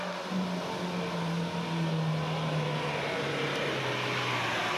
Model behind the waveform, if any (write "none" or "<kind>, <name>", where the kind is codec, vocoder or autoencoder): none